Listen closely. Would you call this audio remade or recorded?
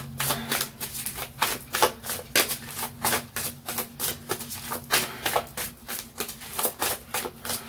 recorded